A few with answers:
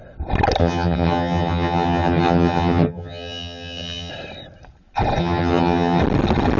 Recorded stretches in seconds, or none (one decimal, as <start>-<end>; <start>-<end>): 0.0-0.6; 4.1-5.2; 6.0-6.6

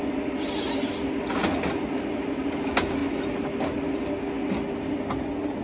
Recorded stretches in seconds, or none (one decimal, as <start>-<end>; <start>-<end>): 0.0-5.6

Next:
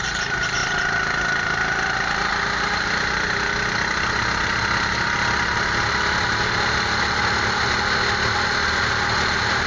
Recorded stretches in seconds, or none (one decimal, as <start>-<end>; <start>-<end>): 0.0-9.7

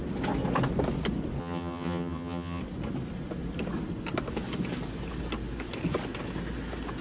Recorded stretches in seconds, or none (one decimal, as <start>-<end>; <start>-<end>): 0.0-1.4; 2.6-7.0

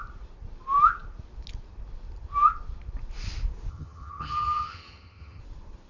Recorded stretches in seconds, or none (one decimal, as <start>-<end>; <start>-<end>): 0.0-3.7; 5.4-5.9

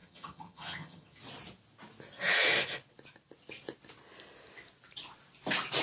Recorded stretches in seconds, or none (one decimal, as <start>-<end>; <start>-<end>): 1.2-5.8

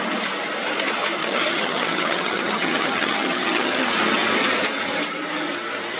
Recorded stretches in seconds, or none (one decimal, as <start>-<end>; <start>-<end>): 0.0-1.2; 3.9-6.0